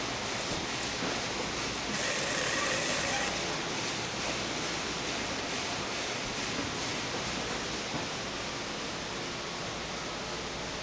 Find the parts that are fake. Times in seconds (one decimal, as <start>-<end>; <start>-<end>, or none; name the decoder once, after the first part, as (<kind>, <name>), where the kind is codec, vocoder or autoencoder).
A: none